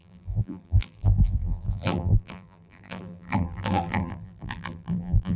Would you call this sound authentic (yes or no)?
no